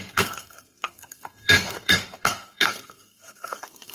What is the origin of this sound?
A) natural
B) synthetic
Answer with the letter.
B